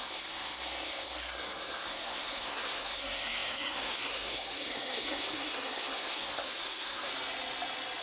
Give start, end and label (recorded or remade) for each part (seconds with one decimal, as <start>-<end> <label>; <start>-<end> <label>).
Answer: 0.0-7.1 remade; 7.1-8.0 recorded